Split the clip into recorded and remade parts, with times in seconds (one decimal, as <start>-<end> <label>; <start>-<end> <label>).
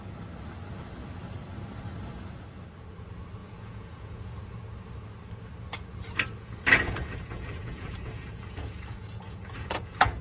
0.0-3.4 recorded; 3.4-4.4 remade; 4.4-6.7 recorded; 6.7-10.2 remade